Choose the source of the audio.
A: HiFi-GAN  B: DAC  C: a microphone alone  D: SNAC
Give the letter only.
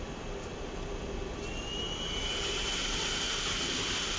C